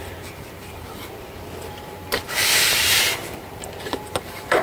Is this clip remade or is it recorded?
remade